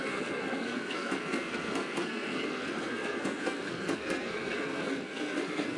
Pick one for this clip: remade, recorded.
remade